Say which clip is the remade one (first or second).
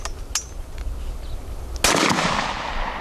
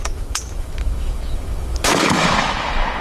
second